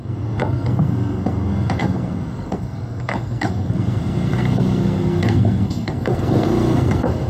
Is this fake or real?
fake